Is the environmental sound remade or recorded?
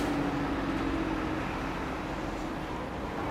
recorded